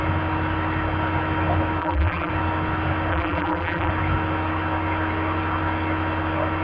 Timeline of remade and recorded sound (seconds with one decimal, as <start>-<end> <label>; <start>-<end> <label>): 0.0-1.8 recorded; 1.8-2.3 remade; 2.3-3.1 recorded; 3.1-3.9 remade; 3.9-6.6 recorded